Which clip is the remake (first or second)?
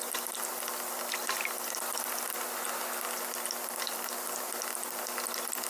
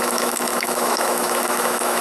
second